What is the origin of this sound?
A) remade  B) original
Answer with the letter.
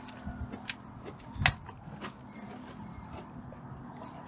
B